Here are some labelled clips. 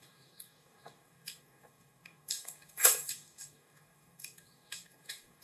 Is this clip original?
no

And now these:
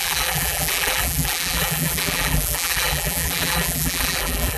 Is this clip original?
no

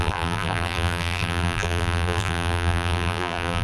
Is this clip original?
no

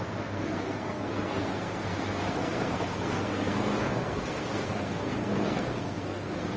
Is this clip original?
no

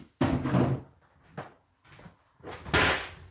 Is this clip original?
yes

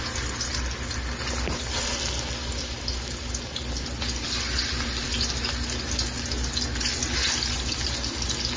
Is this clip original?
yes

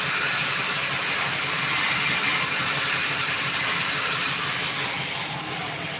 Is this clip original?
yes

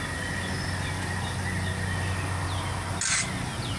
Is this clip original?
yes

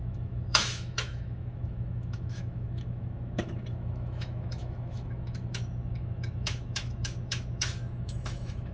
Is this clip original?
no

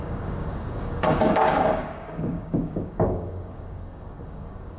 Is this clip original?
no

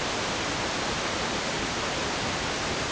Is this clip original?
yes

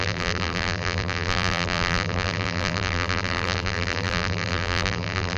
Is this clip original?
no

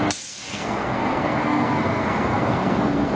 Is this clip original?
no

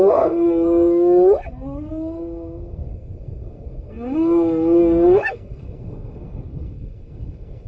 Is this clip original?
no